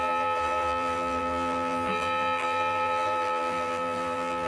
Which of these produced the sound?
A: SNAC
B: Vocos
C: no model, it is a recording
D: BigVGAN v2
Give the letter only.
D